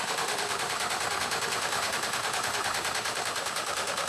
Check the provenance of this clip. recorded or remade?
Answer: remade